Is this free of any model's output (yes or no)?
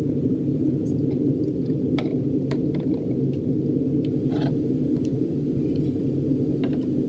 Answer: yes